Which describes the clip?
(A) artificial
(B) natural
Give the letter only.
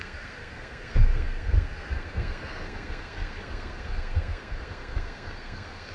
A